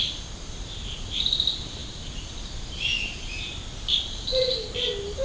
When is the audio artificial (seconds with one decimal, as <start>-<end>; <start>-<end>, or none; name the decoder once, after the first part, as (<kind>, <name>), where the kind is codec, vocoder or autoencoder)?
none